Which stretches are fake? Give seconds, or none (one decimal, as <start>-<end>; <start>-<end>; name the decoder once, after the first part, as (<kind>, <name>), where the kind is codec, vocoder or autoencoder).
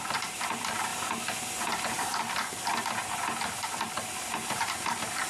0.0-5.3 (vocoder, BigVGAN v2)